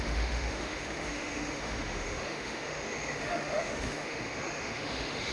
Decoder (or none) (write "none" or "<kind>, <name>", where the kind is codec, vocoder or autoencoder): autoencoder, DAC-VAE